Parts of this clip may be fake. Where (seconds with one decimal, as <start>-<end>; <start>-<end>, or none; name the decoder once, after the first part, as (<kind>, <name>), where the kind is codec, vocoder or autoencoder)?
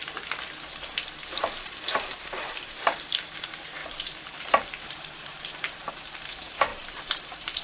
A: 1.5-7.6 (vocoder, BigVGAN v2)